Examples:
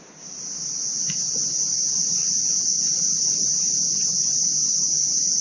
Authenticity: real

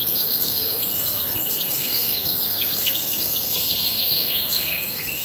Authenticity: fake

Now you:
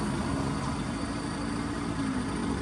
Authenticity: real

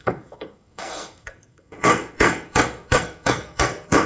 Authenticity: fake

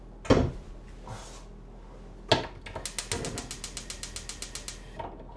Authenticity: real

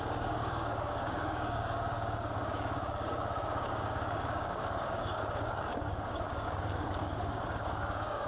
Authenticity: fake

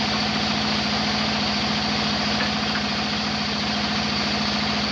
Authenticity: real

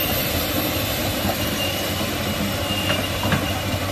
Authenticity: real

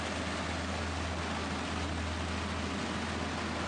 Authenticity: real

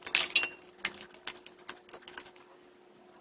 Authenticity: real